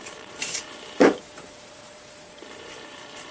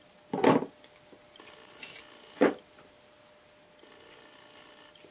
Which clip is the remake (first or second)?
first